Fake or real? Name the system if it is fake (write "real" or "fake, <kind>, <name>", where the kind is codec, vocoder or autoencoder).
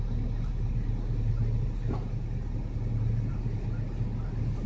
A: real